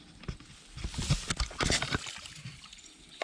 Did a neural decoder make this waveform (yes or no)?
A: no